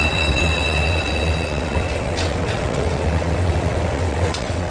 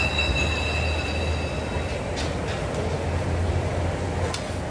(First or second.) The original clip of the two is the second